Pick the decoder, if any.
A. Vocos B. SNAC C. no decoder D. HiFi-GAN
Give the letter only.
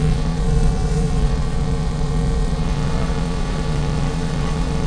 A